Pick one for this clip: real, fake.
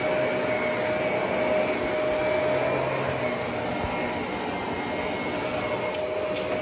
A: real